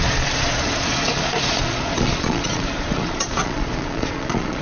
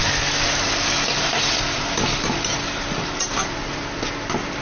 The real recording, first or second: second